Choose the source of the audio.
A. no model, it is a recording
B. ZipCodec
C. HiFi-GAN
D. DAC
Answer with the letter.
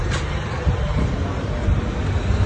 A